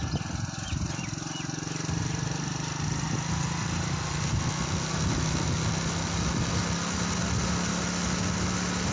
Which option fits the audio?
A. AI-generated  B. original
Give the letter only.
B